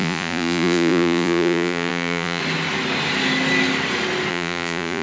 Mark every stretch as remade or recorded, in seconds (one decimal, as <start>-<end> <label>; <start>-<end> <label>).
0.0-2.4 remade; 2.4-4.3 recorded; 4.3-5.0 remade